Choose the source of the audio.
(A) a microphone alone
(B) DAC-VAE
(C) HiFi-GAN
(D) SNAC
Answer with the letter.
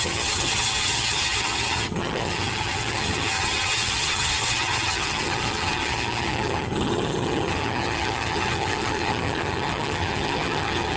C